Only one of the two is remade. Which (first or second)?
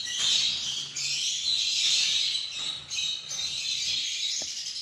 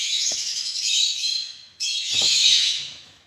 second